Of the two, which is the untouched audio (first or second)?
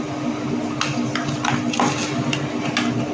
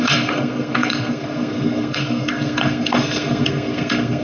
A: first